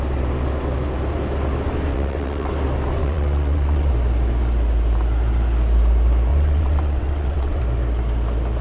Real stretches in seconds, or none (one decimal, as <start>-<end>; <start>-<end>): 0.0-1.9; 2.5-3.0; 3.9-6.3; 7.6-8.6